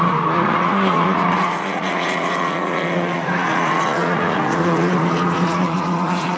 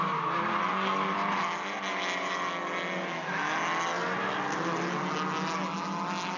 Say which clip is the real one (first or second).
second